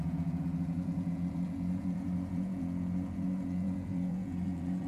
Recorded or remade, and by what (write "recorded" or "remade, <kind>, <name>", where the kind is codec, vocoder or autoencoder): remade, vocoder, Vocos